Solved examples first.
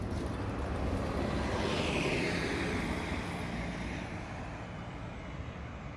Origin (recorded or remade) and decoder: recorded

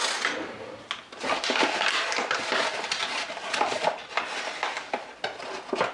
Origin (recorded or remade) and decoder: recorded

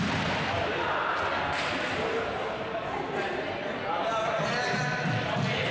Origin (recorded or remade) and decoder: recorded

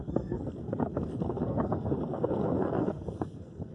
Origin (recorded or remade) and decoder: remade, codec, SNAC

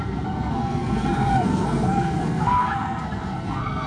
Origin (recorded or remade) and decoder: remade, codec, SNAC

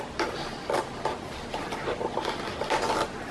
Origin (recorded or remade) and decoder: recorded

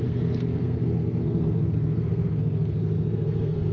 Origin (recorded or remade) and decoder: remade, codec, SNAC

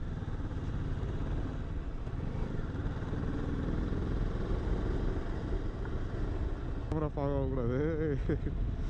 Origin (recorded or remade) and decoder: recorded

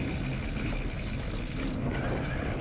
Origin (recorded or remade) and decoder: recorded